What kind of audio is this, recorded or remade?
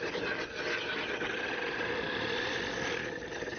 recorded